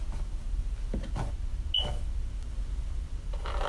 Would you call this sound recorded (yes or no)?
yes